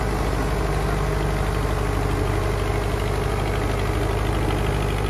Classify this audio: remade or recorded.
recorded